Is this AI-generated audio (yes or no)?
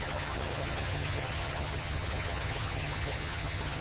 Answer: yes